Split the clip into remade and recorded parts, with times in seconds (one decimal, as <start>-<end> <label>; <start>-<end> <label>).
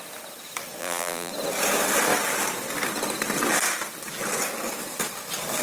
0.0-0.8 recorded; 0.8-1.3 remade; 1.3-5.6 recorded